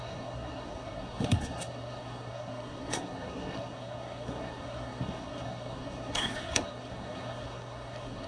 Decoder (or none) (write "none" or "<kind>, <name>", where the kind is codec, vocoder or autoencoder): codec, SNAC